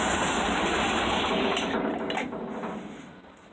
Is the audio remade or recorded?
recorded